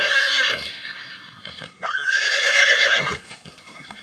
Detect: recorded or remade remade